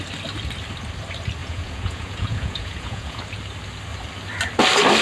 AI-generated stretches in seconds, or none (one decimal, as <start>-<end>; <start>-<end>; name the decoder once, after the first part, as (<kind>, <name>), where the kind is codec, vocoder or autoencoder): 1.4-3.2 (vocoder, Vocos)